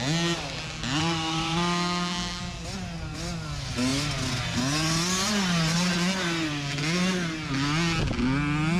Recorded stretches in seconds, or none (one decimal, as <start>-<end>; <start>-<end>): 0.0-1.0; 2.4-8.8